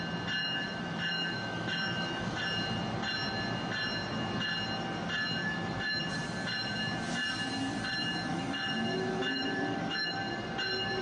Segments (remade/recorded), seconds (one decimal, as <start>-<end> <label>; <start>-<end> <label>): 0.0-0.4 recorded; 0.4-2.4 remade; 2.4-5.4 recorded; 5.4-6.0 remade; 6.0-8.3 recorded; 8.3-10.2 remade; 10.2-11.0 recorded